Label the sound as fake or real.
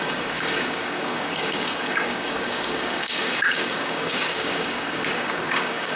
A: fake